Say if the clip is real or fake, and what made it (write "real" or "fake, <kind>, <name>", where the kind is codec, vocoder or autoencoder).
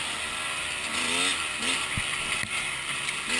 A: real